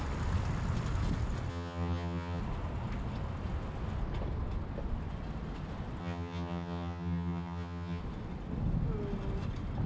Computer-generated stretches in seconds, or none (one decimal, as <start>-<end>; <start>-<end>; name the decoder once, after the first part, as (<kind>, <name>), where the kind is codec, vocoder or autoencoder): 1.5-2.4 (vocoder, HiFi-GAN); 6.0-8.0